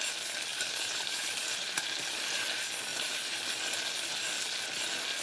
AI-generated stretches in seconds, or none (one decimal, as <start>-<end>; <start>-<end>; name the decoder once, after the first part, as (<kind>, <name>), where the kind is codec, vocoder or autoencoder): 0.5-2.1 (vocoder, BigVGAN v2); 2.9-3.4

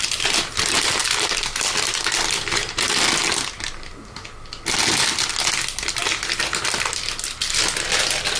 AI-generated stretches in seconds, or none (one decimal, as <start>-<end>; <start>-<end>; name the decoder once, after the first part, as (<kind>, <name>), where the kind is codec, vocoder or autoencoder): 6.0-6.9 (vocoder, BigVGAN v2)

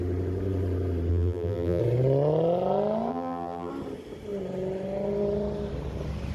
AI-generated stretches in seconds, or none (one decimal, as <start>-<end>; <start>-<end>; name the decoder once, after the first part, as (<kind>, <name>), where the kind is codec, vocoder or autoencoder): 1.1-1.8 (vocoder, BigVGAN v2); 3.1-3.7